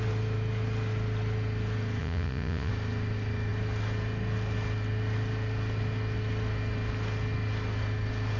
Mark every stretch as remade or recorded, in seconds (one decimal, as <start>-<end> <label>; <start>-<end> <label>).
0.0-2.0 recorded; 2.0-2.7 remade; 2.7-8.4 recorded